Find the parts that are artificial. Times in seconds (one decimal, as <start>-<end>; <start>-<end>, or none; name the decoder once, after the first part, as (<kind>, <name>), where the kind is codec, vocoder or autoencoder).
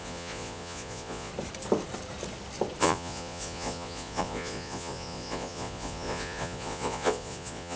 0.0-1.3 (vocoder, Vocos); 2.8-7.8